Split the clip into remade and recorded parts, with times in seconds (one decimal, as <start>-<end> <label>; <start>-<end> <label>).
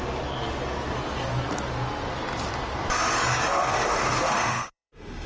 0.0-3.5 recorded; 3.5-5.3 remade